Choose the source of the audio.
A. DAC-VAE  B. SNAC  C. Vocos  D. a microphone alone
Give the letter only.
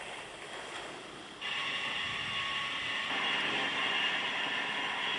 D